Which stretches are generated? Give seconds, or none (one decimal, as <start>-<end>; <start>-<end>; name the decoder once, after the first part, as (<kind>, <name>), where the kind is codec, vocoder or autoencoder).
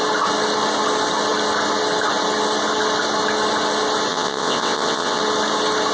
4.1-5.2 (vocoder, WaveNeXt)